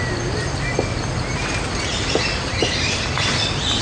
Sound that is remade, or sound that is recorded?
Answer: recorded